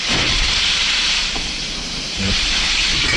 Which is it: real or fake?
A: fake